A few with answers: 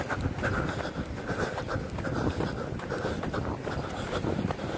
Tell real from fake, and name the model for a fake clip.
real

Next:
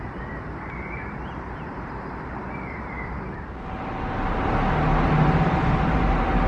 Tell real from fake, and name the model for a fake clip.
real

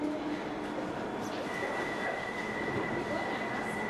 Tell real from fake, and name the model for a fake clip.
real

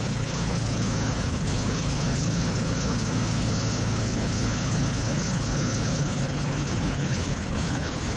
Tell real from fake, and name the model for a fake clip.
fake, codec, HILCodec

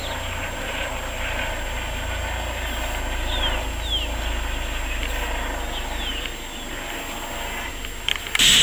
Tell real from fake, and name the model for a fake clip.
real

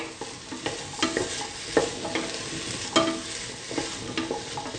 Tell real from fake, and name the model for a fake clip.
real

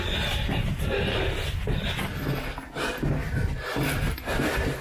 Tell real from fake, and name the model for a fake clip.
real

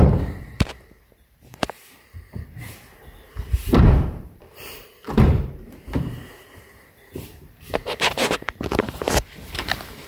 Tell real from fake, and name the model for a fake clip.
fake, vocoder, BigVGAN v2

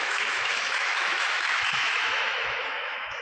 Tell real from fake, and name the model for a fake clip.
fake, autoencoder, DAC-VAE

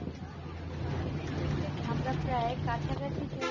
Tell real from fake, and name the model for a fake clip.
real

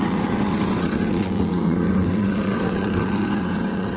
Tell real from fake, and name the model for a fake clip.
fake, vocoder, WaveNeXt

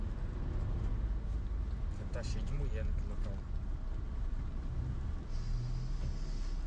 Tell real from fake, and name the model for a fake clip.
real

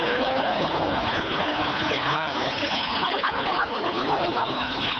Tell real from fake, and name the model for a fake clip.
fake, codec, HILCodec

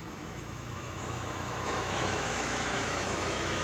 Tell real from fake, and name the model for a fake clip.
fake, autoencoder, DAC-VAE